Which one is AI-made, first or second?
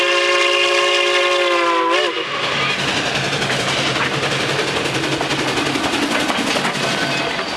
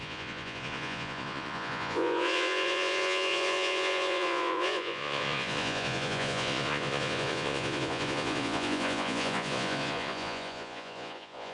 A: second